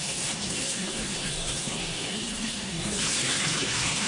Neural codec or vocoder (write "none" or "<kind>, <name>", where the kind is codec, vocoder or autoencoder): codec, SNAC